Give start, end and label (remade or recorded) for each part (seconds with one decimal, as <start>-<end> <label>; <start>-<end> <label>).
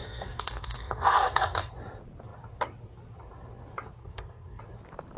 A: 0.0-1.7 remade; 1.7-4.0 recorded; 4.0-4.6 remade; 4.6-5.2 recorded